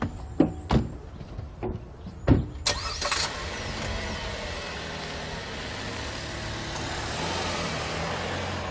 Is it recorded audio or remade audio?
recorded